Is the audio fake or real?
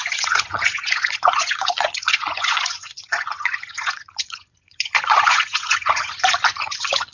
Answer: fake